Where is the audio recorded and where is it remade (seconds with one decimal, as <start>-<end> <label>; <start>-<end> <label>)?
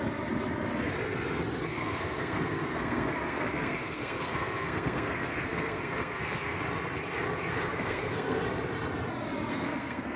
0.0-1.7 recorded; 1.7-6.6 remade; 6.6-7.7 recorded; 7.7-8.4 remade; 8.4-9.5 recorded; 9.5-10.2 remade